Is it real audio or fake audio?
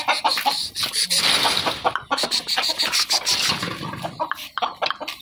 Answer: fake